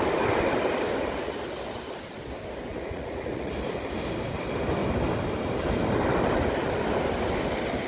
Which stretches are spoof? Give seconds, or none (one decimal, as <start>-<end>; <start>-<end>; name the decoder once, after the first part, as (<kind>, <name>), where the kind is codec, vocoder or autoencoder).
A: 2.7-3.5 (vocoder, Vocos)